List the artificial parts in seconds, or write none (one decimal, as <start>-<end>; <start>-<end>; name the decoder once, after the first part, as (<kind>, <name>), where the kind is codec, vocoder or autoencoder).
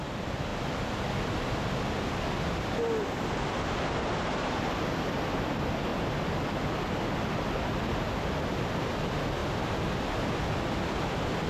none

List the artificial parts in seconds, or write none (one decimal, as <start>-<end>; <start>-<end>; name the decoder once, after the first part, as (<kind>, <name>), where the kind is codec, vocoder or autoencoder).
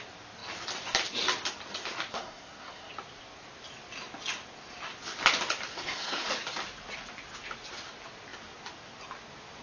2.1-2.9 (codec, SNAC); 5.7-6.3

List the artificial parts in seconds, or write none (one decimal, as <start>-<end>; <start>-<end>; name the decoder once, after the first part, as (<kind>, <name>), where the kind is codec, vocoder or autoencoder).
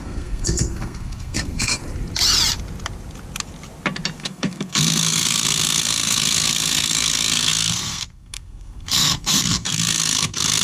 0.0-1.8 (codec, SNAC); 4.2-10.6